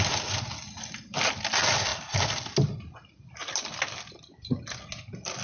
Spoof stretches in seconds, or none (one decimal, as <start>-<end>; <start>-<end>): none